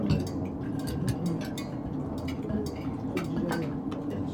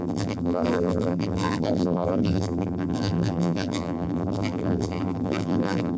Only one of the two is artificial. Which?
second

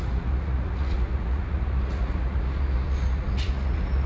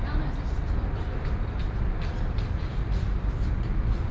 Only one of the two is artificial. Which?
first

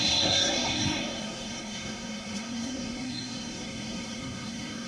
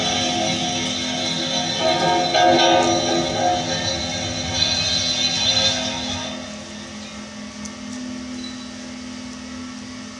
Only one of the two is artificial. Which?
first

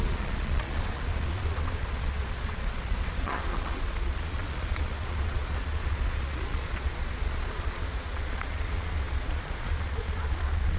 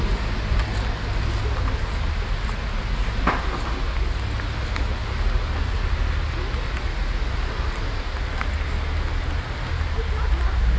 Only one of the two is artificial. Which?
first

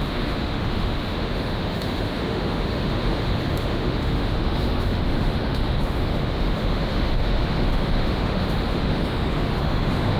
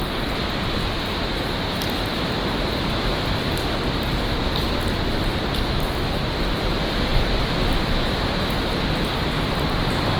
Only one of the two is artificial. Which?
first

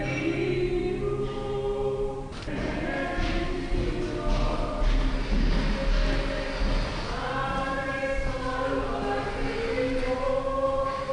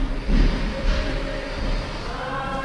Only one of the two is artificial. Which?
second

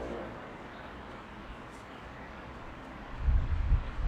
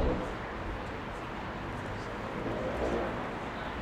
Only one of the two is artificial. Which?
first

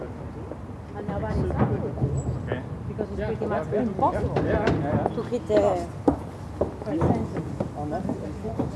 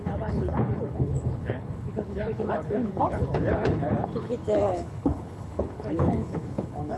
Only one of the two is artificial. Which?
second